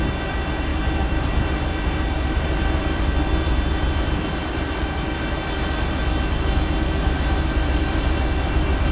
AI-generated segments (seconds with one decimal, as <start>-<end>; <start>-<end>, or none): none